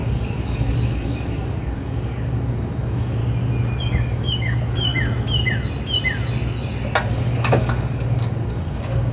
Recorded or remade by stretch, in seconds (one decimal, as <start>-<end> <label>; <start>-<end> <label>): 0.0-3.2 remade; 3.2-3.8 recorded; 3.8-4.9 remade; 4.9-7.1 recorded; 7.1-9.1 remade

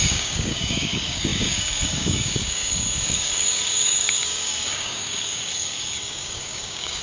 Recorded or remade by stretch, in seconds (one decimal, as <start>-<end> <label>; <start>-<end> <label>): 0.0-7.0 remade

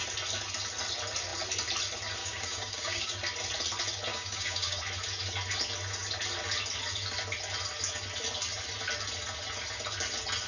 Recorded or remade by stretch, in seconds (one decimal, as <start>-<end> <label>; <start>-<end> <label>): 0.0-2.2 recorded; 2.2-3.1 remade; 3.1-4.1 recorded; 4.1-4.8 remade; 4.8-10.5 recorded

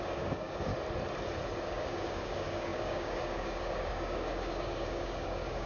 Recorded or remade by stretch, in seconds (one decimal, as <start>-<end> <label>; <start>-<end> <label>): 0.0-0.7 remade; 0.7-1.6 recorded; 1.6-5.7 remade

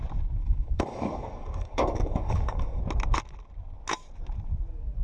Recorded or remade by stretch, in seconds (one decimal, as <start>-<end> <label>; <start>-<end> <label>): 0.0-0.4 recorded; 0.4-2.8 remade; 2.8-5.0 recorded